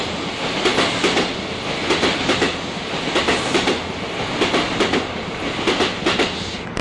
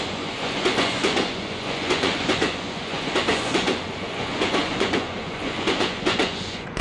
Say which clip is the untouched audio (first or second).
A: first